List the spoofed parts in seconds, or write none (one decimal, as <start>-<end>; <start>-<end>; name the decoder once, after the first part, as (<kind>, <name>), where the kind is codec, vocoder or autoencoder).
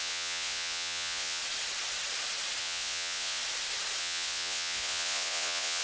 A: 0.0-1.4 (vocoder, Vocos); 2.6-3.4; 4.0-5.8